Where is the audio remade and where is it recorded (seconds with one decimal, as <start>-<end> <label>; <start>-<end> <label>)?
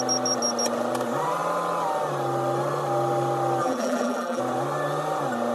0.0-3.6 recorded; 3.6-4.4 remade; 4.4-5.5 recorded